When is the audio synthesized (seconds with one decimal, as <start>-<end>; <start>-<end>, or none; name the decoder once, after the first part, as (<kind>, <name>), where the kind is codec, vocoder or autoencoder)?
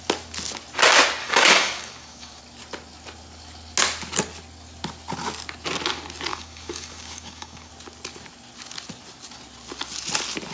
1.2-2.4 (codec, DAC); 6.3-7.7